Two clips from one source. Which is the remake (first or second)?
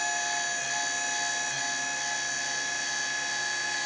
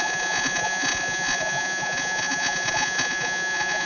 second